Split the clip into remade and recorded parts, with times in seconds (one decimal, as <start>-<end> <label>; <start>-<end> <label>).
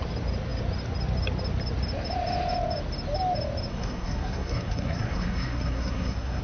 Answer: 0.0-3.7 recorded; 3.7-6.4 remade